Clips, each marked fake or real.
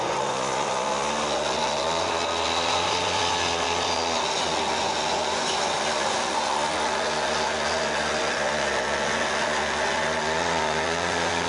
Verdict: fake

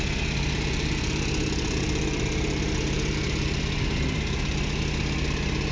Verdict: real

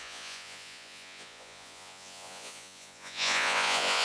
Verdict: fake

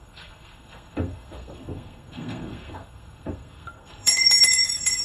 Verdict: fake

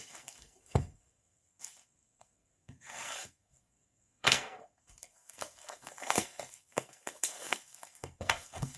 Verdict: fake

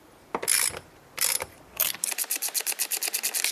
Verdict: fake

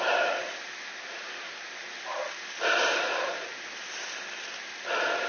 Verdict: real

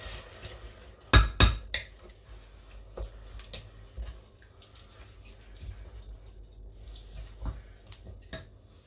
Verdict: real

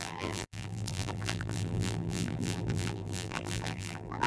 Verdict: fake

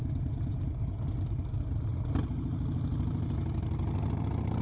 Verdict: real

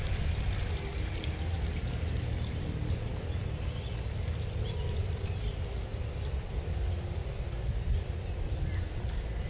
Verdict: fake